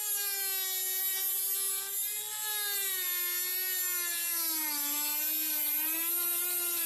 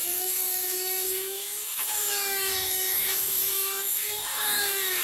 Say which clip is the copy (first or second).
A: second